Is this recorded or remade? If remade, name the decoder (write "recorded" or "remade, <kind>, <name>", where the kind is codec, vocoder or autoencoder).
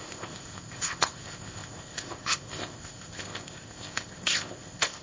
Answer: remade, codec, ZipCodec